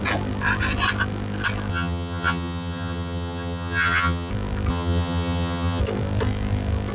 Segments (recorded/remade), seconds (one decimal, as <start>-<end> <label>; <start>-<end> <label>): 0.0-1.7 recorded; 1.7-4.3 remade; 4.3-4.7 recorded; 4.7-5.8 remade; 5.8-6.9 recorded